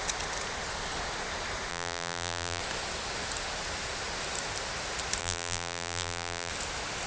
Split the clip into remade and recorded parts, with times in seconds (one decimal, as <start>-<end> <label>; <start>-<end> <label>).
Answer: 0.0-1.7 recorded; 1.7-2.6 remade; 2.6-5.2 recorded; 5.2-6.5 remade; 6.5-7.1 recorded